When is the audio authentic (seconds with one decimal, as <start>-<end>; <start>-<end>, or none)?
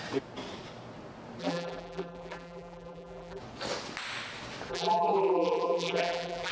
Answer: 0.0-1.4; 3.4-4.7